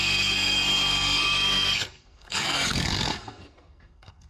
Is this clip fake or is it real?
fake